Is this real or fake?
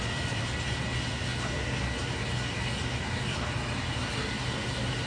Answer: real